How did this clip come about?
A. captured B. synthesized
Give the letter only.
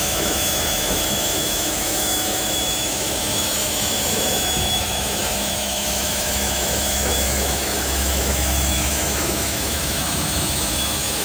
B